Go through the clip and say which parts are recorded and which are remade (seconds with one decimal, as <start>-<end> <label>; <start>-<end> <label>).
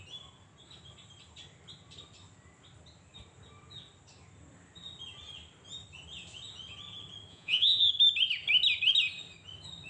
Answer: 0.0-7.3 recorded; 7.3-7.9 remade; 7.9-9.9 recorded